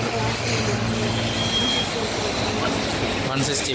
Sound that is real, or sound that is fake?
real